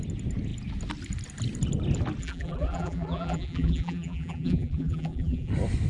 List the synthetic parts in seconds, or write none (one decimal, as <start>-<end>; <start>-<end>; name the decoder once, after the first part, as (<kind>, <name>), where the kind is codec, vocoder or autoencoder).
2.2-5.5 (vocoder, BigVGAN v2)